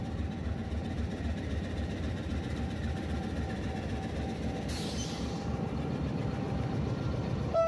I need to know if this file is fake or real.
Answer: fake